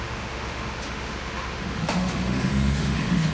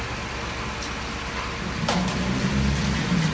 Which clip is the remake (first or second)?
first